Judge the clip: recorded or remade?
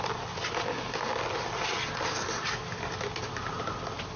recorded